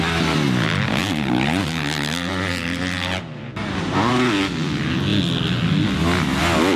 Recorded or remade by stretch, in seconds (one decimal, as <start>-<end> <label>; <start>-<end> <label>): 0.0-1.0 recorded; 1.0-4.1 remade; 4.1-6.8 recorded